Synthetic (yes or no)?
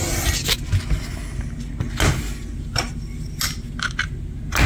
no